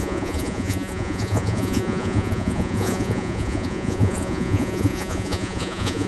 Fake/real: fake